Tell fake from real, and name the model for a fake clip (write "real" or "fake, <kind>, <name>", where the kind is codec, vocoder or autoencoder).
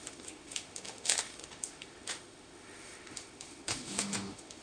fake, autoencoder, DAC-VAE